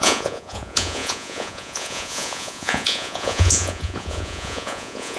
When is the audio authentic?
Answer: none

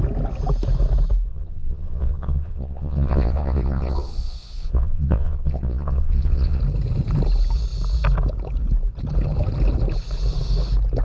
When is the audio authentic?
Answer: 0.0-1.3; 6.6-11.0

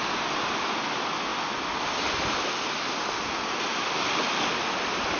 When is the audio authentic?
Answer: 0.0-5.2